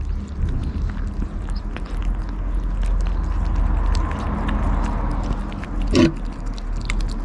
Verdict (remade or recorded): recorded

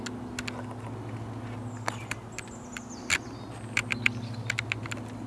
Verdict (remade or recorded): recorded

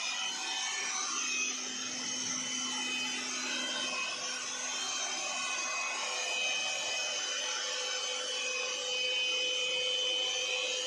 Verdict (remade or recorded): recorded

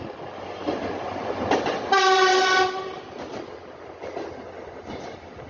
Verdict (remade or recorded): recorded